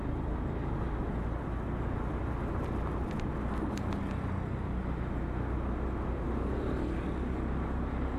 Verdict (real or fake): real